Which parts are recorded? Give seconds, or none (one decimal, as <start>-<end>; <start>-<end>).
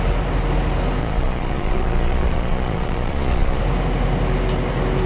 0.0-1.0; 3.6-5.1